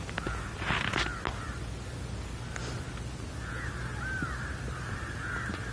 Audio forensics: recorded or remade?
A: recorded